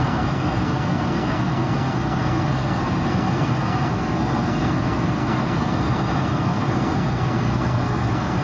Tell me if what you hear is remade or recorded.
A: remade